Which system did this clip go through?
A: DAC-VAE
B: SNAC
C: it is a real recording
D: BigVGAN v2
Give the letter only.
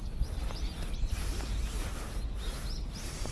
C